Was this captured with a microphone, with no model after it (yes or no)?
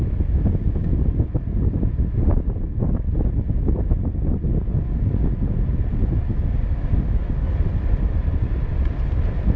yes